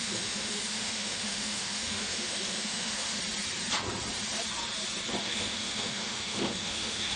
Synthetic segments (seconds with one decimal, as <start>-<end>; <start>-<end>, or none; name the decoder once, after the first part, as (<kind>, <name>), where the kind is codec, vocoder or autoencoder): 0.0-3.2 (autoencoder, DAC-VAE); 5.2-7.2